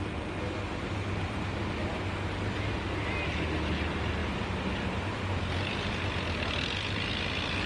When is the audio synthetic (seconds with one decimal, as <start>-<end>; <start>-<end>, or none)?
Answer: none

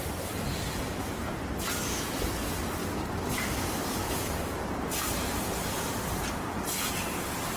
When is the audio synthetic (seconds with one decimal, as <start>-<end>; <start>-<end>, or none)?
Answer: 2.8-4.7

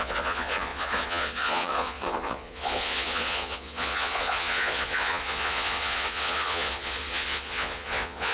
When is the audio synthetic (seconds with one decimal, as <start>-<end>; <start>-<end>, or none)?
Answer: 0.0-8.3

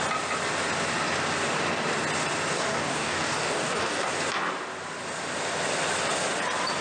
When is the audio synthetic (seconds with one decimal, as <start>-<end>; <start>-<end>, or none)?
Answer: 2.7-4.1

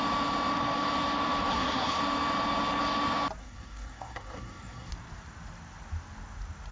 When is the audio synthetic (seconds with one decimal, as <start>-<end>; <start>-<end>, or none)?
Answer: 1.5-2.0; 3.4-4.9